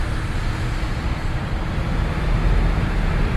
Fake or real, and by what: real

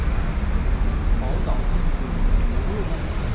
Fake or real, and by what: real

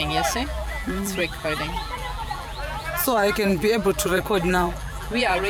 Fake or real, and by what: fake, vocoder, BigVGAN v2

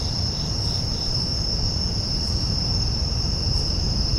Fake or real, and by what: fake, vocoder, BigVGAN v2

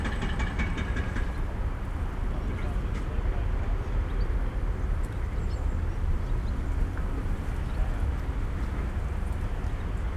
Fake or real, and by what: real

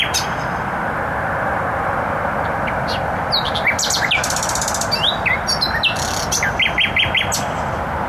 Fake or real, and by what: real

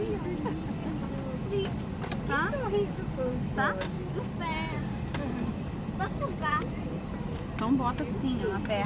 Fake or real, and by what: real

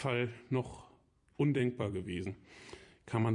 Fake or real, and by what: fake, vocoder, BigVGAN v2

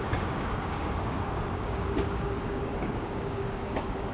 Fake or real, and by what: fake, codec, DAC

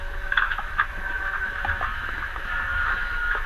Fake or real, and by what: fake, autoencoder, DAC-VAE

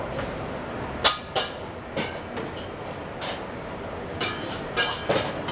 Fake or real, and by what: real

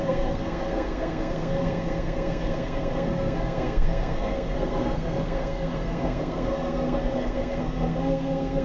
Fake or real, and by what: fake, codec, SNAC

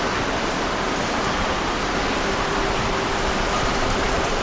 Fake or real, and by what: real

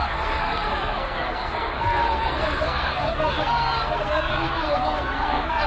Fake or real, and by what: fake, codec, SNAC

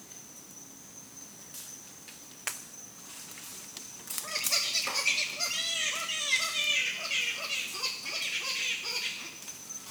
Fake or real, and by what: real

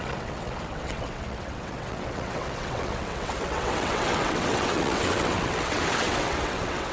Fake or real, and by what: fake, vocoder, WaveNeXt